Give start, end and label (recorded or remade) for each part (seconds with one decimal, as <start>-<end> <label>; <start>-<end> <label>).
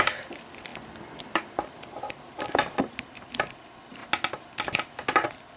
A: 0.0-0.7 remade; 0.7-2.8 recorded; 2.8-4.0 remade; 4.0-5.6 recorded